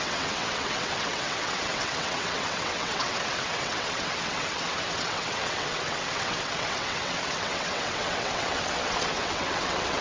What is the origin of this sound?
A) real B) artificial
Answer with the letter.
B